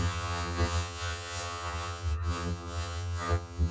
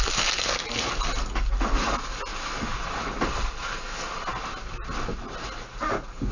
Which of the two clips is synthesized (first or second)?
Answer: first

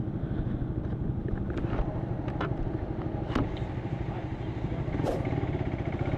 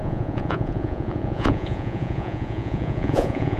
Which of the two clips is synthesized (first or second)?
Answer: second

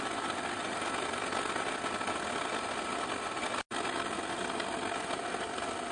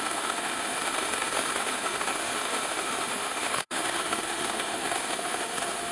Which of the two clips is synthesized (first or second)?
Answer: second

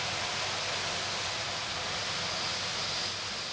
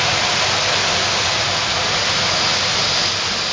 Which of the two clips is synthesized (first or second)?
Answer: second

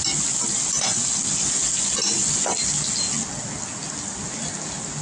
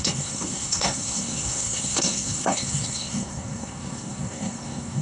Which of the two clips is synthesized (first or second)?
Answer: second